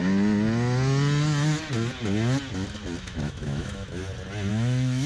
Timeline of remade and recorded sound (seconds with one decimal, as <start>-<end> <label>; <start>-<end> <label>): 0.0-3.0 recorded; 3.0-4.0 remade; 4.0-4.5 recorded; 4.5-5.1 remade